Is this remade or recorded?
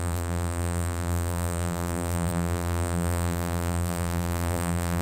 remade